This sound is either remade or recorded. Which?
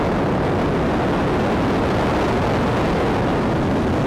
recorded